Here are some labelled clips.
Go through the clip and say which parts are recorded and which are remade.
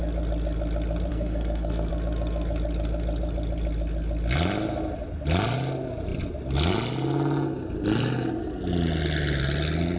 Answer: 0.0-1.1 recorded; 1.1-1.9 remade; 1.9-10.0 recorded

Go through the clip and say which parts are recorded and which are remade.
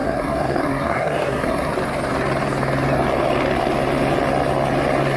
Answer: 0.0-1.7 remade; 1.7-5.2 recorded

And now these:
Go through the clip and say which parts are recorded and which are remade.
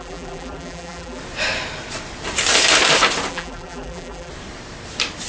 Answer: 0.0-1.2 remade; 1.2-3.3 recorded; 3.3-4.3 remade; 4.3-5.3 recorded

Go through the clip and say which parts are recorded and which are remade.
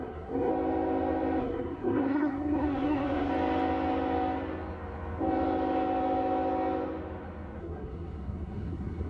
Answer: 0.0-0.5 remade; 0.5-1.4 recorded; 1.4-3.3 remade; 3.3-7.6 recorded; 7.6-9.1 remade